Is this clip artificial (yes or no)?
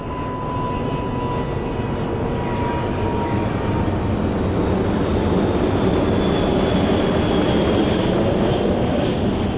no